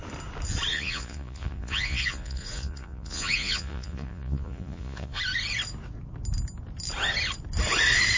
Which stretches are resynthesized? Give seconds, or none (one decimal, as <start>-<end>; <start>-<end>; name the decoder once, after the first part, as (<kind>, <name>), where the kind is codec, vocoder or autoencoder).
0.7-5.2 (vocoder, Vocos)